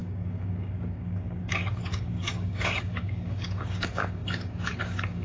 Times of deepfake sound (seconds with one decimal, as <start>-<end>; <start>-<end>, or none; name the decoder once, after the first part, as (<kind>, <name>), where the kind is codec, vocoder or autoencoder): 0.0-5.2 (codec, DAC)